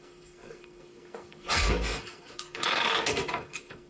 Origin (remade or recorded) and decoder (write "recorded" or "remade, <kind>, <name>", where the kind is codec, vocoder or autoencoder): remade, codec, SNAC